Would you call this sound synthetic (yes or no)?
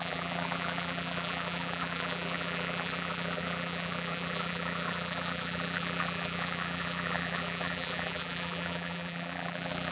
yes